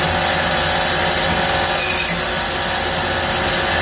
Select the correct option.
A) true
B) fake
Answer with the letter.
A